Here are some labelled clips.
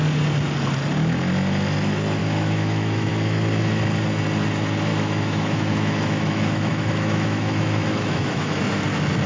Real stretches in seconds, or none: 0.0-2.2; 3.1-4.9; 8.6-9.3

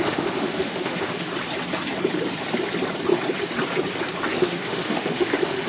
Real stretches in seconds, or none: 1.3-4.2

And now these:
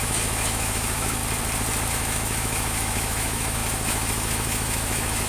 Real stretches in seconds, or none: 1.2-1.9

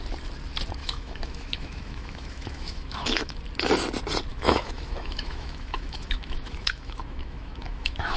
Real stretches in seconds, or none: 0.0-0.8; 3.4-4.3

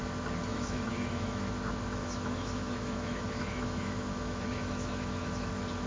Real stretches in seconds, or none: 0.0-0.5; 1.5-2.0; 5.5-5.9

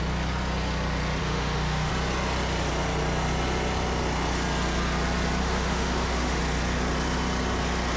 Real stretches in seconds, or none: 0.0-1.2; 1.9-5.4; 6.4-8.0

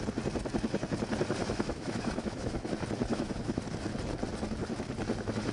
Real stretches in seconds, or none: 0.0-1.4; 2.7-3.1; 3.6-5.5

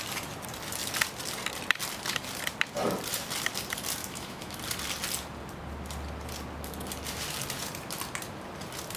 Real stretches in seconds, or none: 0.0-4.0; 4.6-9.0